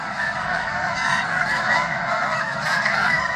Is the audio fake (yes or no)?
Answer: yes